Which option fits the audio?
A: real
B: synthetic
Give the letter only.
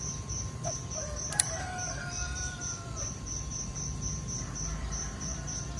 B